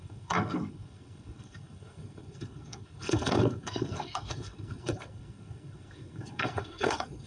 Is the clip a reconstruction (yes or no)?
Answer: yes